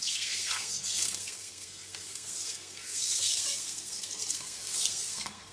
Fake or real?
fake